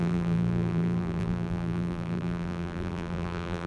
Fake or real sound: fake